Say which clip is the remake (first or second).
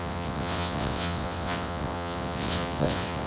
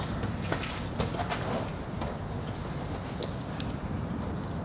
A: first